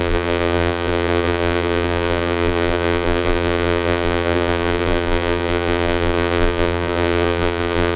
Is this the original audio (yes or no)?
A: no